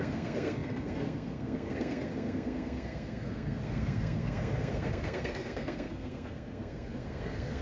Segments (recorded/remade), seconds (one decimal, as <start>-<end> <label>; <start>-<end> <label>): 0.0-7.6 remade